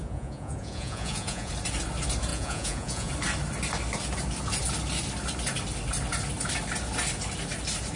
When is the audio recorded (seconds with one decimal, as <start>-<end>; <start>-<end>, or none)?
1.5-2.3; 3.1-8.0